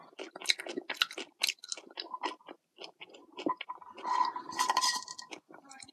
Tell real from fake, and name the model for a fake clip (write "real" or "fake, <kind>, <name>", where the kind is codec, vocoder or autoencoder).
real